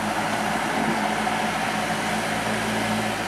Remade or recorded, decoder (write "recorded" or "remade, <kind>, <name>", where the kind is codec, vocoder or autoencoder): recorded